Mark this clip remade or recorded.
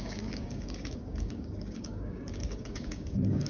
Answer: remade